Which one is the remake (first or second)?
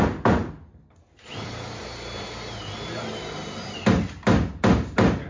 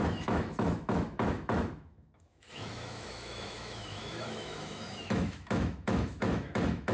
second